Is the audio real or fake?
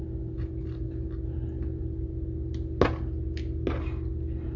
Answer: real